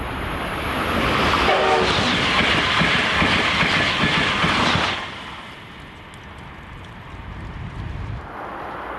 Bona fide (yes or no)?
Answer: yes